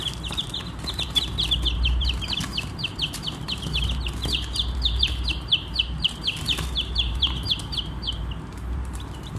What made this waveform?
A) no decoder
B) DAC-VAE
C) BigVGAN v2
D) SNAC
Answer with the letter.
C